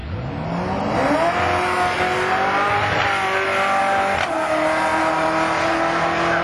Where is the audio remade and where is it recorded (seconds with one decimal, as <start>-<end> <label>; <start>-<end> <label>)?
0.0-4.9 recorded; 4.9-5.7 remade; 5.7-6.4 recorded